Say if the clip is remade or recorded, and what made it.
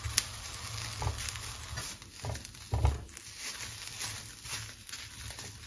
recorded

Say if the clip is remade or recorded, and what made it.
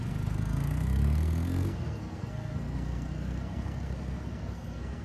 remade, codec, SNAC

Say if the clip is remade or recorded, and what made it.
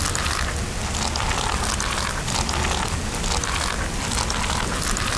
recorded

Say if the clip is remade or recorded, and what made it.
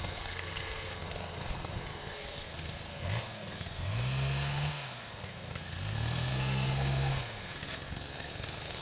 remade, codec, SNAC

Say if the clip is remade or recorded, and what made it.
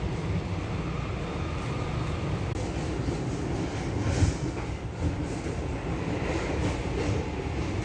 recorded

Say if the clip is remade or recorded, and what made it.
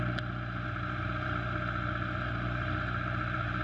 recorded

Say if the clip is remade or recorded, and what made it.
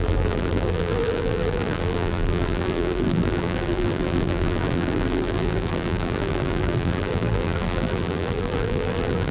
remade, vocoder, BigVGAN v2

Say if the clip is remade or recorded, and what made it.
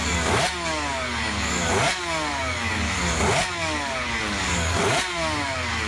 remade, codec, DAC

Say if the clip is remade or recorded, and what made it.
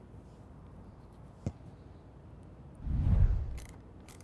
remade, vocoder, BigVGAN v2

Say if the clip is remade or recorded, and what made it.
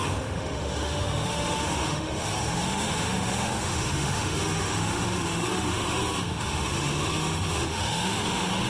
remade, autoencoder, DAC-VAE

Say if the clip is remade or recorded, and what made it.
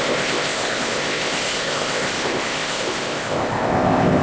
remade, codec, ZipCodec